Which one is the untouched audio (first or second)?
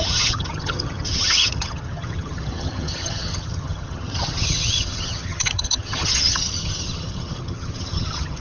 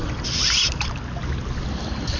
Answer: second